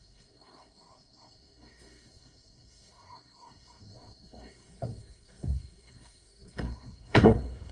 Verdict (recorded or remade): remade